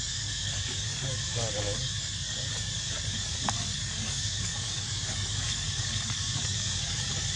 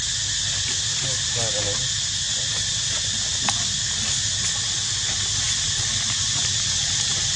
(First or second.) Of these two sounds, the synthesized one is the first